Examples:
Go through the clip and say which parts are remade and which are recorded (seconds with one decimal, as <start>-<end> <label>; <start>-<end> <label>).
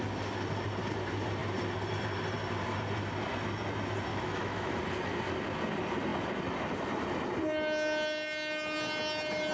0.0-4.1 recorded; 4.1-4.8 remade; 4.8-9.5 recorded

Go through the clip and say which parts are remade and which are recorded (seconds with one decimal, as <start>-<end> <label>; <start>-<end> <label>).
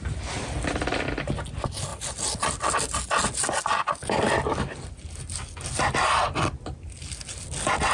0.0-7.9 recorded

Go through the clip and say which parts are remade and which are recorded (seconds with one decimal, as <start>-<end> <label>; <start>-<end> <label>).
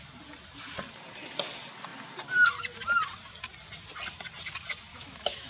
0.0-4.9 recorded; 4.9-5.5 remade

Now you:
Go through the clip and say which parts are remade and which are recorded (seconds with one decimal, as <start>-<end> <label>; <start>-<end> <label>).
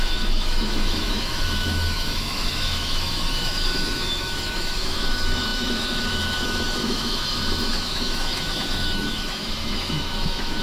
0.0-10.6 remade